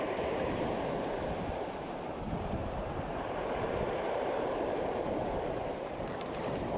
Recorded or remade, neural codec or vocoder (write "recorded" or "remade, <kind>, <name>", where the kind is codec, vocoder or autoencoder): remade, vocoder, BigVGAN v2